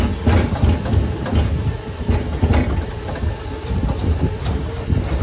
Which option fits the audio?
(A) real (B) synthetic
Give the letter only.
A